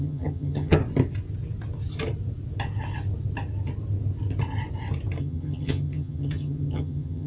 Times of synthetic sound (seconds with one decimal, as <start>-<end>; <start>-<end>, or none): 0.0-0.8; 5.2-7.3

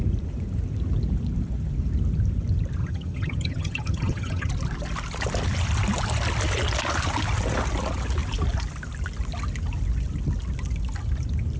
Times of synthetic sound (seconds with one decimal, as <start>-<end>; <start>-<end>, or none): 2.8-4.5

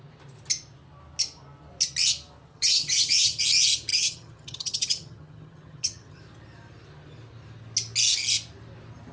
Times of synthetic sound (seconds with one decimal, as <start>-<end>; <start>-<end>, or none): 2.5-3.4; 3.9-6.2

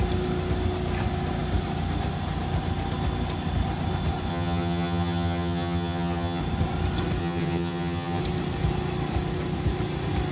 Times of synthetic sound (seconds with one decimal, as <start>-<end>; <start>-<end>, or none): 4.3-6.4; 7.2-8.2

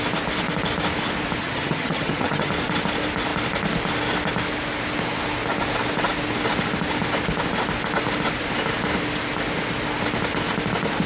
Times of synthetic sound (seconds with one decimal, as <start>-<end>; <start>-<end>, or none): 1.4-2.5